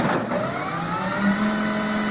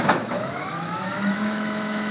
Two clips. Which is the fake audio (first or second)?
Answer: second